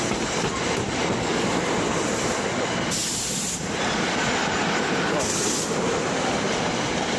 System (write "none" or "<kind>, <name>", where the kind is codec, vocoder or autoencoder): vocoder, BigVGAN v2